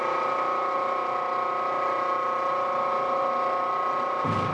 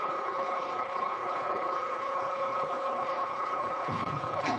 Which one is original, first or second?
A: first